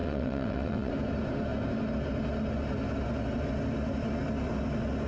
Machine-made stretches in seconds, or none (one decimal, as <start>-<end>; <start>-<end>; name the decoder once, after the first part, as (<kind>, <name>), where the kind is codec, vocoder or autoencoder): 0.0-0.9 (vocoder, WaveNeXt)